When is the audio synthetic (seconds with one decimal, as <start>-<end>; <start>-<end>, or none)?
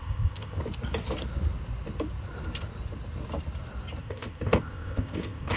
0.0-0.6; 4.0-5.6